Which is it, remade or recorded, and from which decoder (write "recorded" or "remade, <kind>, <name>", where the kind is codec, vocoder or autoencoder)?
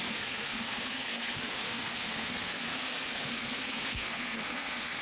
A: remade, codec, SNAC